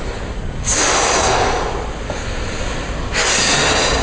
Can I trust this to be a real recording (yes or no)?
yes